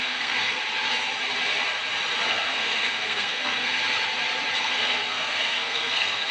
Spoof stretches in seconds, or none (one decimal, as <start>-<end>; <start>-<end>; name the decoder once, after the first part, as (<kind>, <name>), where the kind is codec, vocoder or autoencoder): 0.0-0.6 (codec, SNAC); 2.3-3.8; 4.6-6.3